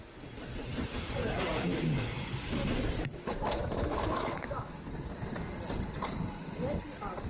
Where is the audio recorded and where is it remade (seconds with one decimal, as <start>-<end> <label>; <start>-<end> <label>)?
0.0-3.1 recorded; 3.1-4.9 remade; 4.9-7.3 recorded